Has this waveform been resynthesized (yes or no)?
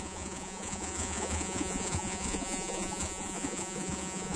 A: yes